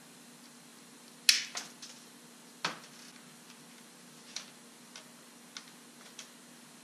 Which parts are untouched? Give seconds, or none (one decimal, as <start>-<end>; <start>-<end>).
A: 0.0-6.8